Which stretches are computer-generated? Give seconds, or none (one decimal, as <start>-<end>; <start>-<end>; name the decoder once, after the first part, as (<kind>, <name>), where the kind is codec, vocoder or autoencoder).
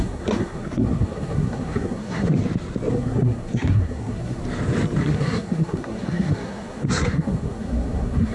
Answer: 0.0-2.4 (codec, SNAC); 2.9-4.4; 5.0-8.3